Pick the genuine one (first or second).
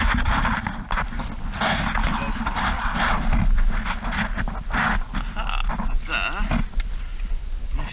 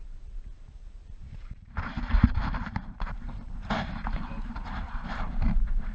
first